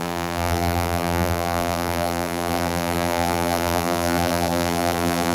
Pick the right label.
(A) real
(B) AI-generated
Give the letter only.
B